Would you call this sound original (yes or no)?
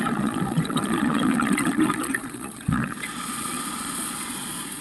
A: no